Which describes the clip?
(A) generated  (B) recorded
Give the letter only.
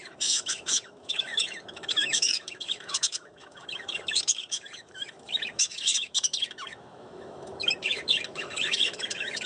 A